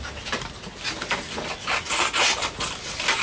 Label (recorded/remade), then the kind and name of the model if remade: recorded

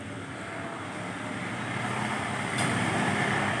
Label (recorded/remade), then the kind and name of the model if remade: recorded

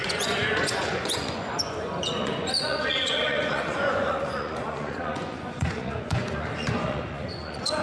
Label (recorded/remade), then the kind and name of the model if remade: remade, vocoder, Vocos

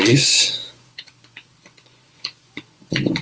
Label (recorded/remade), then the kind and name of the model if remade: remade, vocoder, Vocos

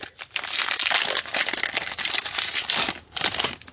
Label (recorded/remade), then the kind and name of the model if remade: recorded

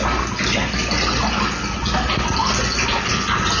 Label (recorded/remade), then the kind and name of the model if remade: recorded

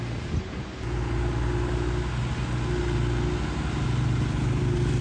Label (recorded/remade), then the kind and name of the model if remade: recorded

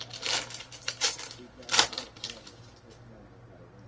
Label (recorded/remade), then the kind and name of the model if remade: recorded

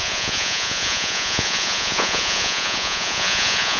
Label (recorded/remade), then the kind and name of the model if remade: remade, vocoder, Vocos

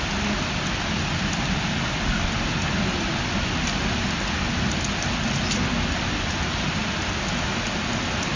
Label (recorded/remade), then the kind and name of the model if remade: recorded